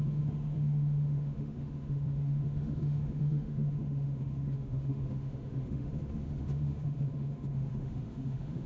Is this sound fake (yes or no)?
yes